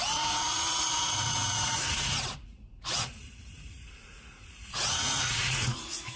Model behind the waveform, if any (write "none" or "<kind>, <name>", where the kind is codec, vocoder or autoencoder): vocoder, Vocos